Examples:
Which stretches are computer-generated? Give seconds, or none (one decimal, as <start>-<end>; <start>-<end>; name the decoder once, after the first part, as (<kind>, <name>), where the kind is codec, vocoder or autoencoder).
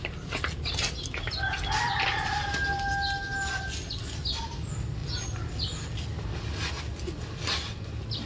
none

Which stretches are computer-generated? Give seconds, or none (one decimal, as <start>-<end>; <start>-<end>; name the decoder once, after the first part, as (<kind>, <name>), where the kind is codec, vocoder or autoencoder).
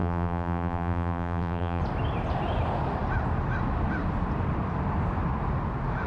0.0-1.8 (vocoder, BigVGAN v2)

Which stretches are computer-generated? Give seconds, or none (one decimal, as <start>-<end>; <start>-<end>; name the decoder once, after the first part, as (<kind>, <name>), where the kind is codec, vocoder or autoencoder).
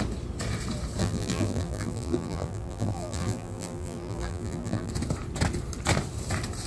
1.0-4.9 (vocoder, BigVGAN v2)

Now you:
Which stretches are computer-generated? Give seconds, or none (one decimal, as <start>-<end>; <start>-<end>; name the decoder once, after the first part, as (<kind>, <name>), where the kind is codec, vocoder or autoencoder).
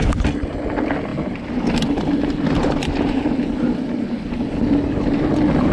1.1-3.9 (vocoder, BigVGAN v2)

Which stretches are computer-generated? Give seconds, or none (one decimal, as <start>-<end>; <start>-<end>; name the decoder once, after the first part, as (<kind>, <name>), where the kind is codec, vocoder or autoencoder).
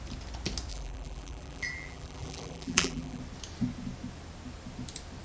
0.7-3.2 (vocoder, BigVGAN v2)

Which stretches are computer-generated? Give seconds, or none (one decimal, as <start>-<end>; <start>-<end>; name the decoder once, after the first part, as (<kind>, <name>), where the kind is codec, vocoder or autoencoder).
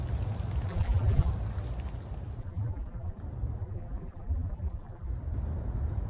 0.7-1.3 (vocoder, BigVGAN v2); 2.4-3.2; 3.6-5.1